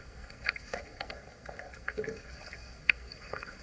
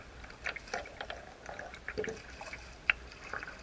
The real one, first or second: second